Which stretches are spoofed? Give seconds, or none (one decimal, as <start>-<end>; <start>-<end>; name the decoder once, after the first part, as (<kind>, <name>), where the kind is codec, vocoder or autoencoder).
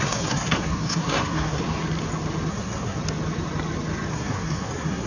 0.0-1.6 (codec, SNAC); 2.5-3.0; 4.1-5.1